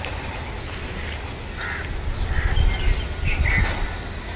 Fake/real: real